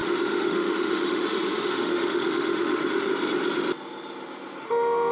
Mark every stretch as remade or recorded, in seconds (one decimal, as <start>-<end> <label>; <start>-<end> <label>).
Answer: 0.0-3.1 remade; 3.1-4.6 recorded; 4.6-5.1 remade